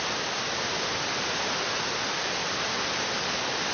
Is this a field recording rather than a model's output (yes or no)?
yes